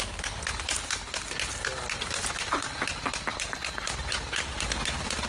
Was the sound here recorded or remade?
recorded